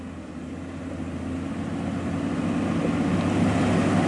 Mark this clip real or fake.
real